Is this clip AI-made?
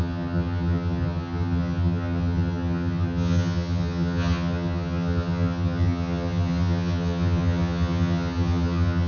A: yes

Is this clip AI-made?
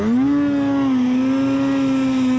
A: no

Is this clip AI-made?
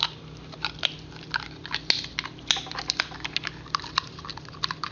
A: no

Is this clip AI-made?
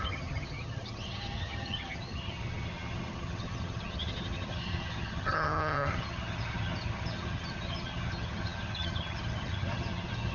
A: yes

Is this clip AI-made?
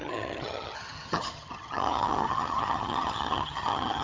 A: yes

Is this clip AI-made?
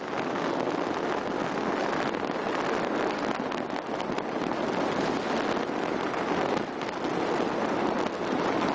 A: no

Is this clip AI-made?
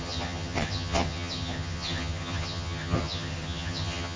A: yes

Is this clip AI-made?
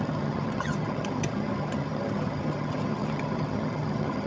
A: yes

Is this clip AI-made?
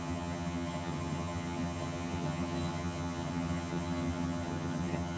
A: yes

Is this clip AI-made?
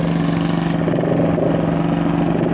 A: no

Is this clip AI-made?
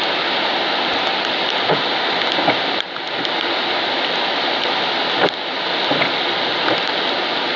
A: no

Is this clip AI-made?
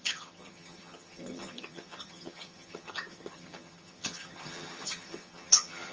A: yes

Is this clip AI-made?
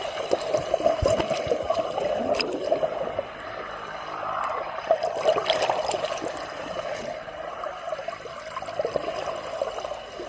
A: no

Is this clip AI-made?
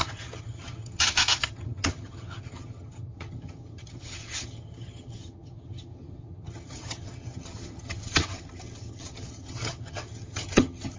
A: yes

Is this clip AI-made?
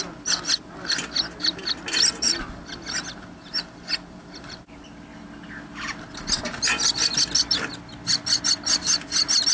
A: no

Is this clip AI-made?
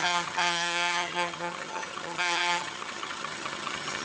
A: yes